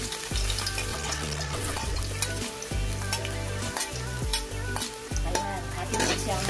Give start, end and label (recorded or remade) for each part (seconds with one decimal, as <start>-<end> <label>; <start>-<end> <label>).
0.0-0.9 recorded; 0.9-2.0 remade; 2.0-6.5 recorded